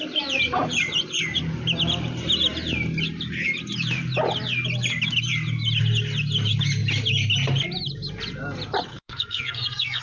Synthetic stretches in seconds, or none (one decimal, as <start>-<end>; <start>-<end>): 8.9-10.0